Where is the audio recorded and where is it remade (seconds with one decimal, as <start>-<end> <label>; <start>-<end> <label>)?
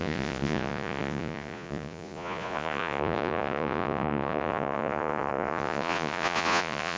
0.0-7.0 remade